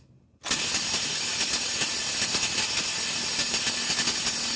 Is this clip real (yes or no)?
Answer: yes